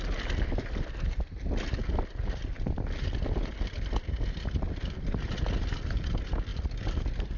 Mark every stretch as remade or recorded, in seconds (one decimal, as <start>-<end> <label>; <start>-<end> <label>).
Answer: 0.0-7.4 recorded